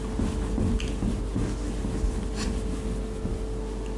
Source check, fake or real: real